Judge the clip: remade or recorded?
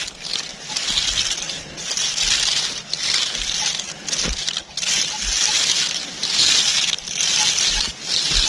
recorded